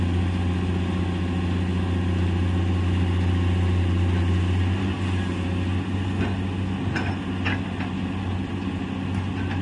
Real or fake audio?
real